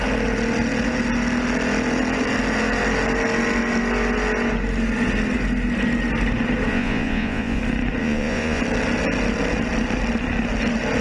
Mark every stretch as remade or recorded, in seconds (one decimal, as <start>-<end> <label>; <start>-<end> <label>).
0.0-6.7 recorded; 6.7-7.6 remade; 7.6-8.0 recorded; 8.0-8.6 remade; 8.6-11.0 recorded